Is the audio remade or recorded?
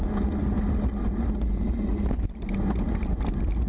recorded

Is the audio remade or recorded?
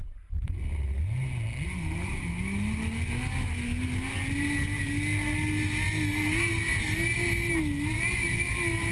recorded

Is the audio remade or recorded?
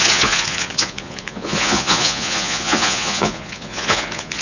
remade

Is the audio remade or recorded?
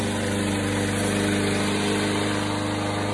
recorded